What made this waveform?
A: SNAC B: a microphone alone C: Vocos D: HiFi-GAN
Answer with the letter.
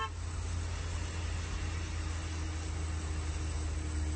B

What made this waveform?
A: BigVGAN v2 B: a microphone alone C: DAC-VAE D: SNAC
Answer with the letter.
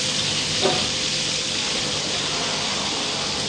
B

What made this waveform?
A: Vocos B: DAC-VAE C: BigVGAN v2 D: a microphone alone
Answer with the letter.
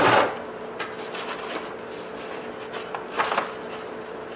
D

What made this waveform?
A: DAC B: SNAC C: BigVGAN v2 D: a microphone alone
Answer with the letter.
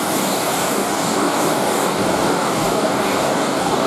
A